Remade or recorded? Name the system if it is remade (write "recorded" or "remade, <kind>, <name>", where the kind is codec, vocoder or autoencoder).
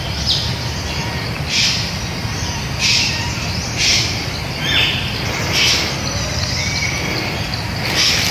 recorded